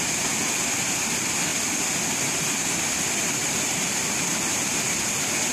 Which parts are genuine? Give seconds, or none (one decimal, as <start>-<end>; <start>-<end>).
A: 0.0-3.2; 4.7-5.5